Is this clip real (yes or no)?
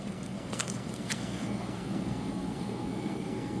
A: no